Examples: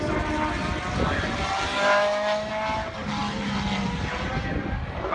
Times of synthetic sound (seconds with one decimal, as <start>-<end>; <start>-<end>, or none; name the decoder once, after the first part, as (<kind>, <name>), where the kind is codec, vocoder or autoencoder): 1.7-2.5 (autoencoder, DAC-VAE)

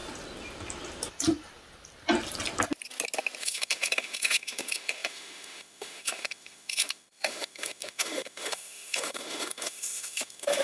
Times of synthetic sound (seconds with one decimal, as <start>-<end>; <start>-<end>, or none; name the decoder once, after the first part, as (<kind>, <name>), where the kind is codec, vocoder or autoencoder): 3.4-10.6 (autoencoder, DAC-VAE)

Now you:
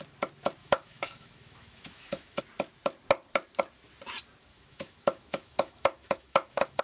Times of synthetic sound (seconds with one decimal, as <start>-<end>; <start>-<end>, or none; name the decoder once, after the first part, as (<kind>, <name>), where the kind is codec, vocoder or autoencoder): 0.6-2.4 (autoencoder, DAC-VAE); 4.5-6.8